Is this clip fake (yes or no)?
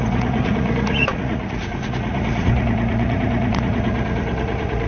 yes